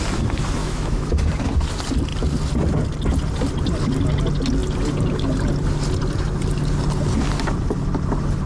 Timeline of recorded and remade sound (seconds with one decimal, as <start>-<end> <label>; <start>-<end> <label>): 0.0-0.6 recorded; 0.6-1.1 remade; 1.1-8.5 recorded